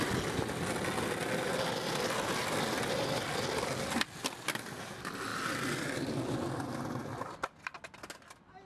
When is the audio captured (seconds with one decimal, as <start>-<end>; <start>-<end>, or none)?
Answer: 0.0-8.6